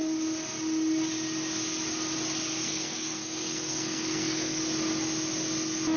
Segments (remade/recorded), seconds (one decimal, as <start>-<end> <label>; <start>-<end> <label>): 0.0-2.6 recorded; 2.6-4.6 remade; 4.6-6.0 recorded